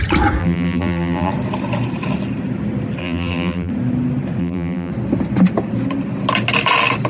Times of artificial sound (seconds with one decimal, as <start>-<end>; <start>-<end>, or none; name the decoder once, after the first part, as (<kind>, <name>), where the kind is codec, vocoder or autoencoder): 0.4-1.3 (vocoder, BigVGAN v2); 3.0-3.7; 4.4-4.9